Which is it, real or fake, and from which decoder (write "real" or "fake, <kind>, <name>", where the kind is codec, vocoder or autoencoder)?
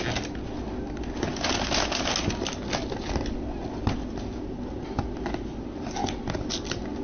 real